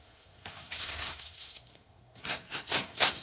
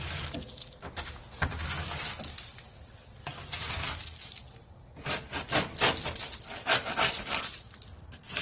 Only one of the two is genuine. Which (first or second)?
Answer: second